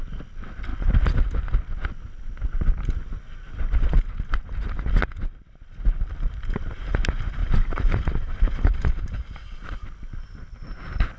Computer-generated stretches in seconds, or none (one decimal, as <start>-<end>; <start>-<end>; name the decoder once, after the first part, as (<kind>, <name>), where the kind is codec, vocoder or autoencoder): 7.4-9.9 (vocoder, BigVGAN v2)